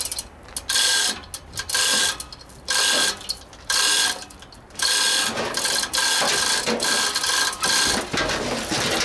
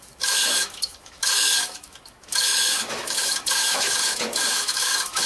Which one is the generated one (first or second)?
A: second